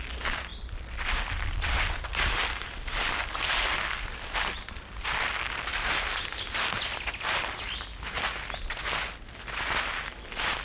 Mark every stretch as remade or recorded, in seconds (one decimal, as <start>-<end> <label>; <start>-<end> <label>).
0.0-5.7 recorded; 5.7-6.4 remade; 6.4-10.6 recorded